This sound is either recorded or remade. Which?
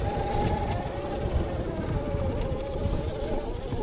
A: recorded